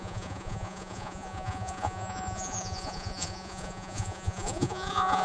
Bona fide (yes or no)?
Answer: no